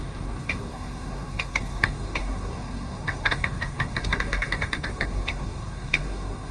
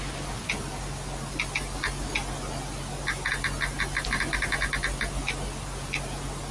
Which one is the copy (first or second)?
first